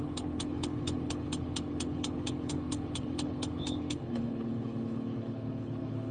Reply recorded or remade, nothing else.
remade